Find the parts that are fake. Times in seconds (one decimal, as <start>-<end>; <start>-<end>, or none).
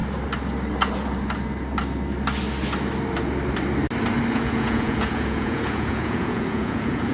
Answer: 4.3-7.1